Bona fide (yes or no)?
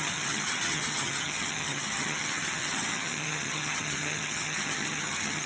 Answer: no